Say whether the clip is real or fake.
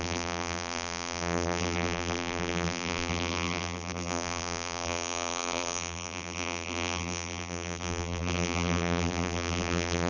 fake